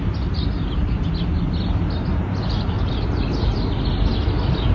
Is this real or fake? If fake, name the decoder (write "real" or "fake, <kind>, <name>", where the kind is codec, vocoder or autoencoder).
real